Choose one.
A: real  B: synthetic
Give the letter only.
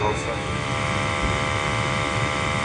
B